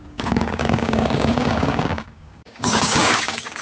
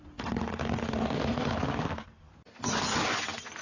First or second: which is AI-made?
first